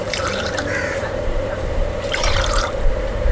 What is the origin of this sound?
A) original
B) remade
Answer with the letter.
B